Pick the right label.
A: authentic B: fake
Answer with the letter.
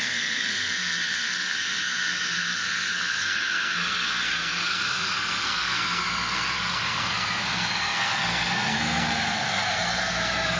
B